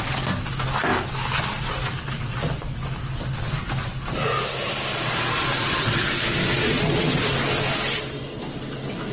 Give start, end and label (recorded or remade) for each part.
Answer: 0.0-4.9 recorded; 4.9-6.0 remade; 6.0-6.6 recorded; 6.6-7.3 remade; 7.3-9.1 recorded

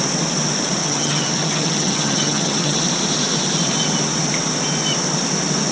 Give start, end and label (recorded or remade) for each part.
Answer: 0.0-0.8 recorded; 0.8-2.8 remade; 2.8-5.7 recorded

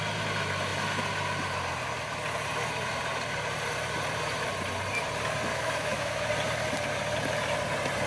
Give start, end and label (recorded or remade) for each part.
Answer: 0.0-5.5 recorded; 5.5-6.3 remade; 6.3-8.1 recorded